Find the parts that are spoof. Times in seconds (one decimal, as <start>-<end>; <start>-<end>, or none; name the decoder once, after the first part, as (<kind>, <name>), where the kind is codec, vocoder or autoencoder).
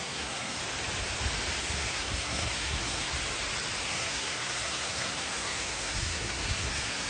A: 0.0-0.6 (codec, SNAC); 1.6-3.1; 3.8-7.1